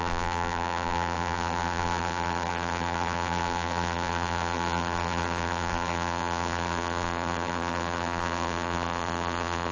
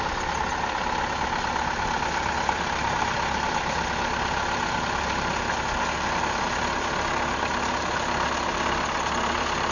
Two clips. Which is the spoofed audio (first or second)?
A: first